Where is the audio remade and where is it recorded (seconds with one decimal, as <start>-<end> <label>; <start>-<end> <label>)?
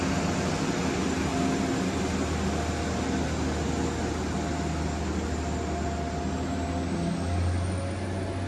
0.0-8.5 recorded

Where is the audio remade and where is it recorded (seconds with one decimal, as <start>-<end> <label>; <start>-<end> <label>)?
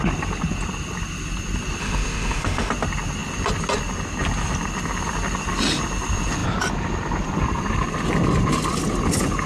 0.0-1.8 recorded; 1.8-2.7 remade; 2.7-9.5 recorded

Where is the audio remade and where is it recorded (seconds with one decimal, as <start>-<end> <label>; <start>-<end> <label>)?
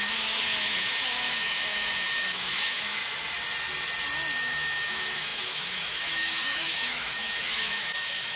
0.0-3.0 remade; 3.0-4.4 recorded; 4.4-8.4 remade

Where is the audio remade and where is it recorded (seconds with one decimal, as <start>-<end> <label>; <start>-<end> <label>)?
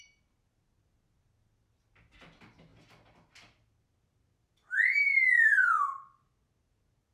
0.0-7.1 recorded